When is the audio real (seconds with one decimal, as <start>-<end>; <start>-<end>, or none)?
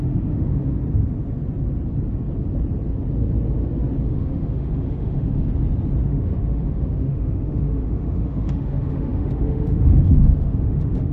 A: 0.8-4.1; 5.5-6.0